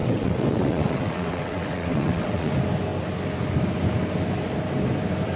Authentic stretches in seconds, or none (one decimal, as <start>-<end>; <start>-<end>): 2.5-5.4